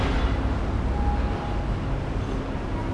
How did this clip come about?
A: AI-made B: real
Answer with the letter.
B